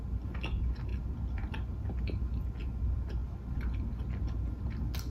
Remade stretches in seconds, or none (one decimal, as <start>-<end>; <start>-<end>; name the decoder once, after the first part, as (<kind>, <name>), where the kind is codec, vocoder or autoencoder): none